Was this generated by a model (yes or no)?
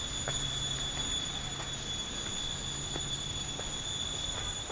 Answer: no